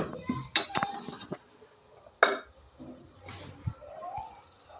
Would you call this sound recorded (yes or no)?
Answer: yes